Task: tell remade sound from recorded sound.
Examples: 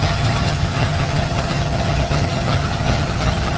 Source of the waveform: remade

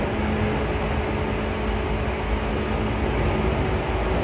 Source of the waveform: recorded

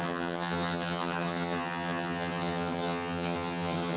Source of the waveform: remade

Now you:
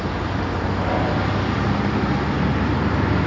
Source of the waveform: recorded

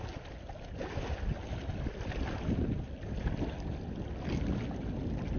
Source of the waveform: recorded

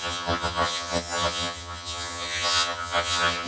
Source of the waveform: remade